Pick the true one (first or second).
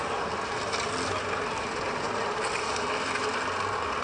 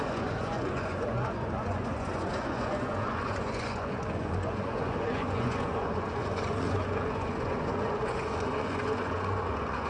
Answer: first